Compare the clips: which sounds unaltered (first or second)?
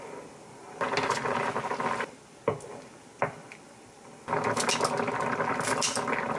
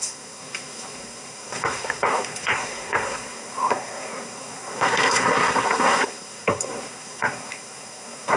first